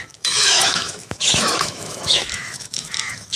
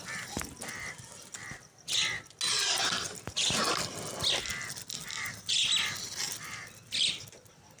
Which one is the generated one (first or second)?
first